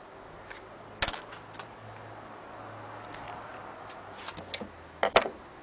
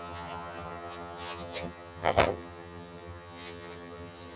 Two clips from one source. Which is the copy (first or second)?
second